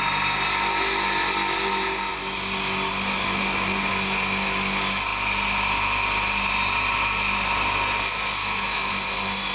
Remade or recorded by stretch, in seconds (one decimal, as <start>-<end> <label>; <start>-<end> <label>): 0.0-8.4 recorded; 8.4-8.9 remade; 8.9-9.5 recorded